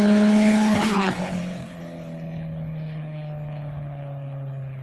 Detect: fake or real fake